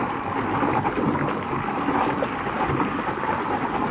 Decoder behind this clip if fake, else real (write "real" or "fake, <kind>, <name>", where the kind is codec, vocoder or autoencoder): real